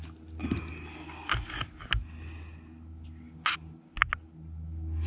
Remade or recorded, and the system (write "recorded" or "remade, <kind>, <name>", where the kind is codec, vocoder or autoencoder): recorded